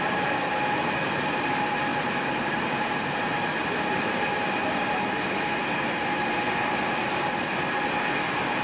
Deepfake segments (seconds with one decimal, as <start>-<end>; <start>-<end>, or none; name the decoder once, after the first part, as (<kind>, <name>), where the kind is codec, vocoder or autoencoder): none